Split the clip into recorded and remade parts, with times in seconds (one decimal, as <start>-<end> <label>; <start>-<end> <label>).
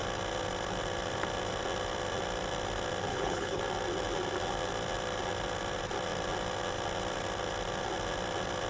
0.0-3.1 recorded; 3.1-3.6 remade; 3.6-8.7 recorded